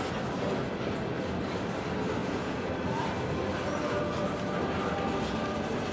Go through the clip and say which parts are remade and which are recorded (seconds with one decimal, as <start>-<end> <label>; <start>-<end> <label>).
0.0-2.2 recorded; 2.2-2.7 remade; 2.7-5.9 recorded